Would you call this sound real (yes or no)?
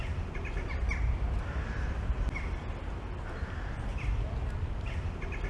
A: yes